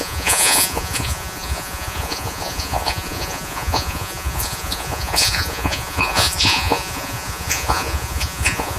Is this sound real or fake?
fake